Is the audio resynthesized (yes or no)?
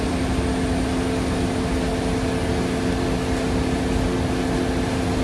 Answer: no